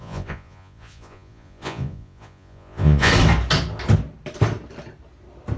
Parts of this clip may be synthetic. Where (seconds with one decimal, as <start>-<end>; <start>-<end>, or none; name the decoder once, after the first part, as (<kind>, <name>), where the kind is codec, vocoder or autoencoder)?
0.0-3.1 (vocoder, Vocos)